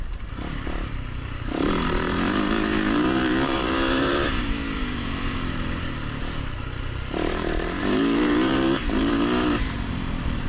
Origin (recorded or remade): remade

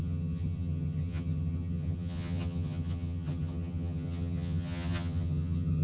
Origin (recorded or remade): remade